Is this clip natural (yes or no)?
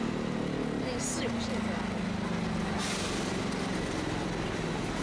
yes